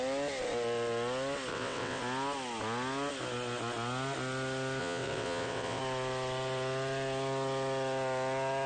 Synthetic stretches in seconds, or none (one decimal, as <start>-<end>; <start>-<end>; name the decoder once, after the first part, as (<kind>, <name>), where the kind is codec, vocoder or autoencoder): 1.5-2.0 (vocoder, WaveNeXt); 4.8-5.8